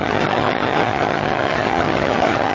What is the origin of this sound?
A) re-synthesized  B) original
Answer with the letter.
A